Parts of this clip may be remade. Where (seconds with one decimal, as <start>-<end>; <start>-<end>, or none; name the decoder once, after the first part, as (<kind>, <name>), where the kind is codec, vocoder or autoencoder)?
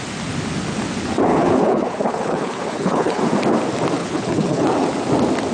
1.3-3.2 (codec, HILCodec); 4.0-4.9